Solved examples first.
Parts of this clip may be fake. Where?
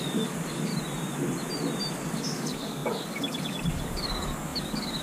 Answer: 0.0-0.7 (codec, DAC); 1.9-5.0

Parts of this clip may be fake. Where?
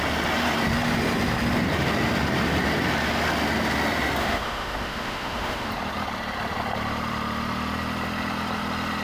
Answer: 4.2-5.7 (autoencoder, DAC-VAE)